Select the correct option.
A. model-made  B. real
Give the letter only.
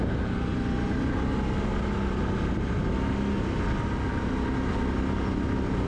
B